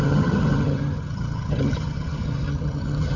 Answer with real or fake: fake